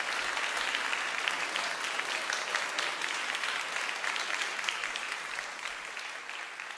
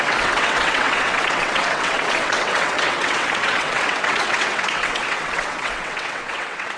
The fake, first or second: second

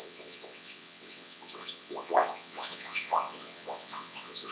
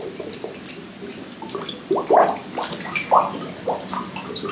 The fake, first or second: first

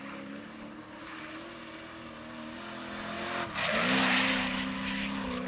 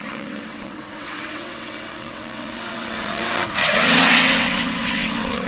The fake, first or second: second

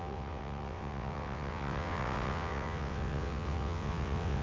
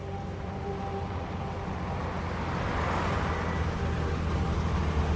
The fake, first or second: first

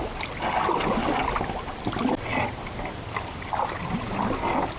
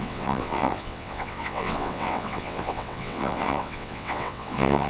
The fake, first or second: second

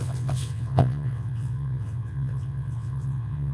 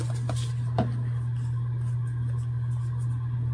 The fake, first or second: first